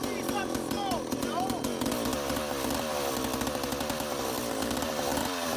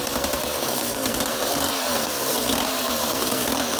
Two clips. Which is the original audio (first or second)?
first